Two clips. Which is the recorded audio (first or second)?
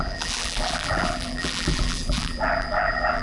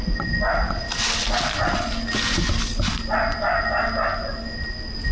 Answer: second